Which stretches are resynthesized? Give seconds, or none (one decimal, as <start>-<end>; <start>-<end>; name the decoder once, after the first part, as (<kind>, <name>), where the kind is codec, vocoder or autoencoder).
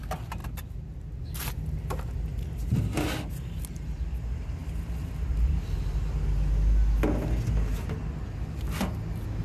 none